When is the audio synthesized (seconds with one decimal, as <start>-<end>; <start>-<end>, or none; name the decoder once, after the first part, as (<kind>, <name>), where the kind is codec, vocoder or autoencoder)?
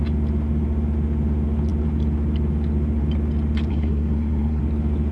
3.7-4.6 (codec, SNAC)